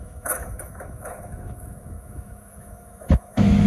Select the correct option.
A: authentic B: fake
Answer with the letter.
B